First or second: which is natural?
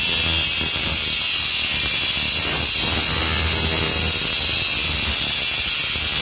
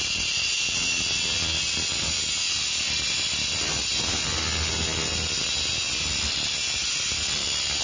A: first